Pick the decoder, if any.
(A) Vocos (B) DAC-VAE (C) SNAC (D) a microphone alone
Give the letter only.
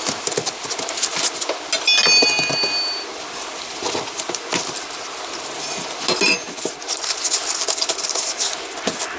D